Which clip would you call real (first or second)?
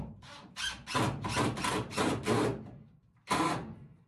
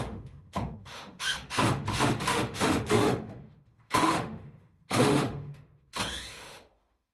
first